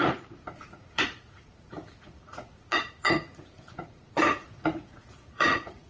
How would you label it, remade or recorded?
remade